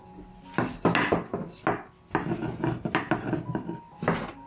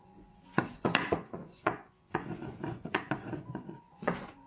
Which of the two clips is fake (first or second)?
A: second